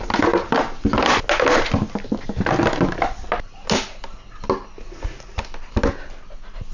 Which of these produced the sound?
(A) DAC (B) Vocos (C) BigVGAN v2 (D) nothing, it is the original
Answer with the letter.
D